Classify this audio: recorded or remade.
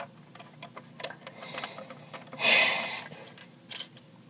recorded